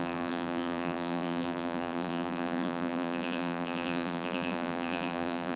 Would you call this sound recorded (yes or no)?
no